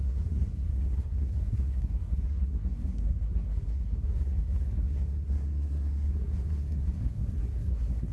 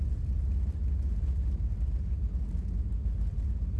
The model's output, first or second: first